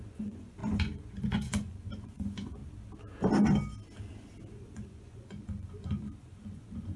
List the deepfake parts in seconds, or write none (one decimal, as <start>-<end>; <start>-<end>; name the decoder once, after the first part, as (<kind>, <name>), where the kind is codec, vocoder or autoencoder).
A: 0.0-2.6 (vocoder, Vocos); 4.5-7.0